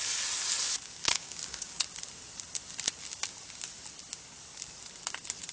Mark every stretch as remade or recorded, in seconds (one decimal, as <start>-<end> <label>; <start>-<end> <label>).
0.0-1.0 recorded; 1.0-1.8 remade; 1.8-5.5 recorded